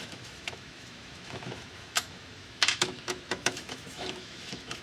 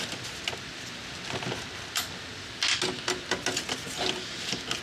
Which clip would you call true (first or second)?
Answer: second